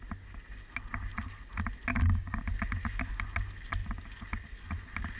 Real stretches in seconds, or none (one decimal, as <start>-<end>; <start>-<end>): 0.0-1.9; 2.4-5.2